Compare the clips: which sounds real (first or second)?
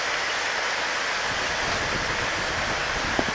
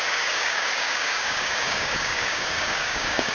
first